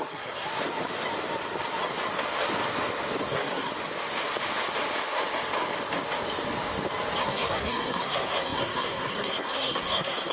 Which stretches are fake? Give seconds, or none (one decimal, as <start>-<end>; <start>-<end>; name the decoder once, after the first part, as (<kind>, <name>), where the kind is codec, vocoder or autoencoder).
0.0-0.5 (codec, SNAC); 3.3-3.7; 7.2-10.3